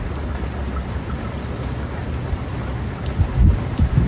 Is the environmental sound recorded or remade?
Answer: recorded